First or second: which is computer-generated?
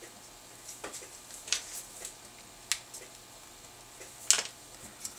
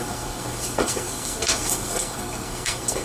second